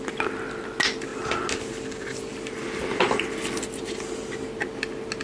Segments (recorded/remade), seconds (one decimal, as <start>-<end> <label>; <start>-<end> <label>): 0.0-5.2 recorded